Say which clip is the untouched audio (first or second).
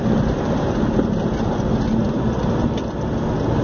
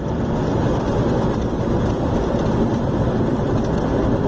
first